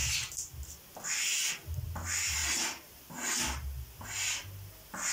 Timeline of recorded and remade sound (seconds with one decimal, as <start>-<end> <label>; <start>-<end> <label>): 0.0-2.4 recorded; 2.4-3.0 remade; 3.0-5.1 recorded